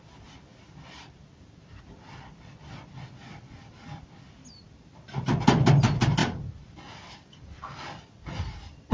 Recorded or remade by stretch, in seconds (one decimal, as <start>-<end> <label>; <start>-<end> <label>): 0.0-8.9 recorded

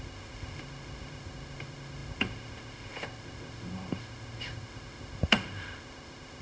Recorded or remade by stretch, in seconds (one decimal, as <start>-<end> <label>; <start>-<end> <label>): 0.0-6.4 remade

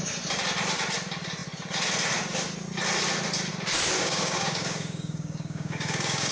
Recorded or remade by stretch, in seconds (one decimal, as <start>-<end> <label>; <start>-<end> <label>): 0.0-4.0 recorded; 4.0-6.3 remade

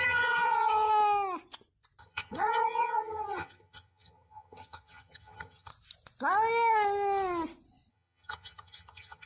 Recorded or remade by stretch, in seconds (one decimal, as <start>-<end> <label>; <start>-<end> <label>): 0.0-0.9 remade; 0.9-2.0 recorded; 2.0-5.7 remade; 5.7-7.9 recorded; 7.9-9.3 remade

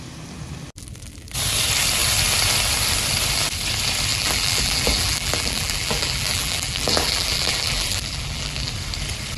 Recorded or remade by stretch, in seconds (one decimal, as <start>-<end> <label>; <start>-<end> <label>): 0.0-4.1 recorded; 4.1-8.7 remade; 8.7-9.4 recorded

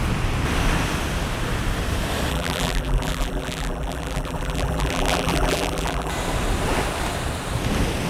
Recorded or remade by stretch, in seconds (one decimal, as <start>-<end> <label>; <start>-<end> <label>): 0.0-2.3 recorded; 2.3-6.1 remade; 6.1-8.1 recorded